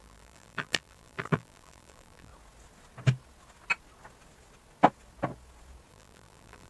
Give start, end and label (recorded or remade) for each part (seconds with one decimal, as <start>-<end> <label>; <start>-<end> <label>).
0.0-2.3 remade; 2.3-5.9 recorded; 5.9-6.7 remade

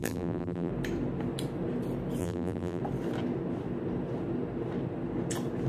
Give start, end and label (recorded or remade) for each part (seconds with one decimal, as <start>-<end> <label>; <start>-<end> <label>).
0.0-0.7 remade; 0.7-2.2 recorded; 2.2-2.8 remade; 2.8-5.7 recorded